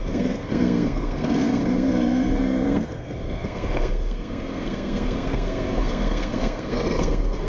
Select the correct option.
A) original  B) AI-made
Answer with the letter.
B